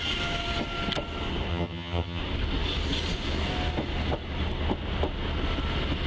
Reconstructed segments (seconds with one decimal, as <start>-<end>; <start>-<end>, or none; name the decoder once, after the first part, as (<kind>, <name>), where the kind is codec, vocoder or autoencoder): 1.5-2.2 (vocoder, HiFi-GAN)